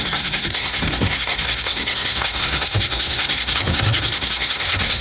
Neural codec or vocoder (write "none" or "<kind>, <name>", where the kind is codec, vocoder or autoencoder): codec, SNAC